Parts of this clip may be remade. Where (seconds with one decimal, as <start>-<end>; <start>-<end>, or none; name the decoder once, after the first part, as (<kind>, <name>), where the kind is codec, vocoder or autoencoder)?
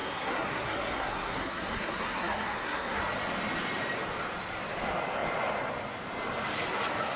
0.0-3.0 (codec, SNAC)